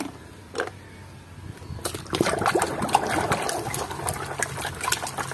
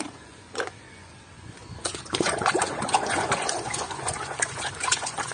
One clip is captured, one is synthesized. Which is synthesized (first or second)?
second